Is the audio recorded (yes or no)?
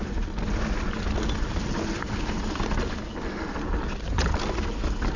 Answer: yes